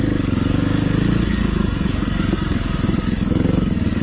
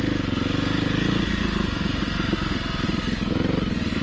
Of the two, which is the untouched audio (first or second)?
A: second